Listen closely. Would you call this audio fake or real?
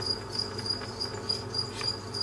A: real